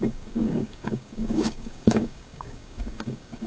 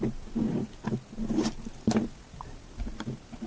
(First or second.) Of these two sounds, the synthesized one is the first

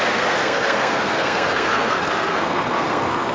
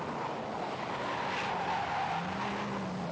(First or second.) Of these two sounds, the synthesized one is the first